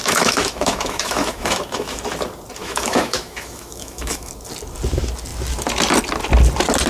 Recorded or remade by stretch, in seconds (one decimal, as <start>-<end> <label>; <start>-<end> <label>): 0.0-2.0 remade; 2.0-2.6 recorded; 2.6-4.3 remade; 4.3-6.9 recorded